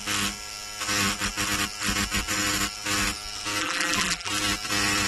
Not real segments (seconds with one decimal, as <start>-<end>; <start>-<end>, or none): 3.6-4.3